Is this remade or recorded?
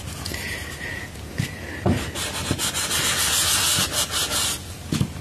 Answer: recorded